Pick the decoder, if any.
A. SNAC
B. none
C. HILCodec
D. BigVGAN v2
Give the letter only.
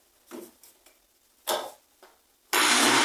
B